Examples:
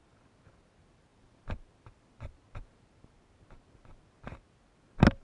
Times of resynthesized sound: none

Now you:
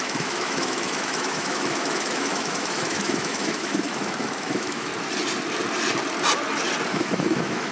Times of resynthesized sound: 0.0-4.9 (autoencoder, DAC-VAE); 6.9-7.7